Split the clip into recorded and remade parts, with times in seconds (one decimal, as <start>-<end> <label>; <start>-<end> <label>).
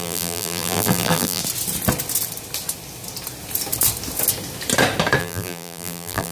0.0-1.4 remade; 1.4-5.2 recorded; 5.2-6.3 remade